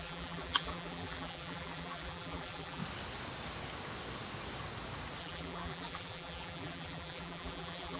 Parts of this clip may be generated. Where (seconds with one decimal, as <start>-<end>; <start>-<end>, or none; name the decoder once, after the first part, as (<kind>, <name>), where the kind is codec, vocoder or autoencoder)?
0.0-2.8 (vocoder, BigVGAN v2); 5.2-8.0